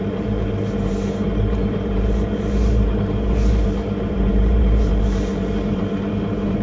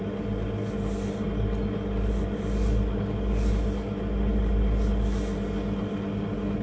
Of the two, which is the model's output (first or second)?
first